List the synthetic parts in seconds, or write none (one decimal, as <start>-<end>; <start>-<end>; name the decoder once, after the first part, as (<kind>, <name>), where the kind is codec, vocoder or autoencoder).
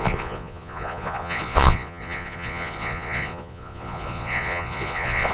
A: 0.0-5.3 (vocoder, Vocos)